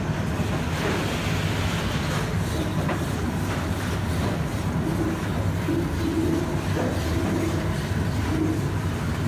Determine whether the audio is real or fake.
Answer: real